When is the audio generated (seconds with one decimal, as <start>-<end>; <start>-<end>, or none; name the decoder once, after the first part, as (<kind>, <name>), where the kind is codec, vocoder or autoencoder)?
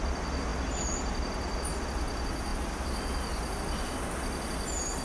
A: none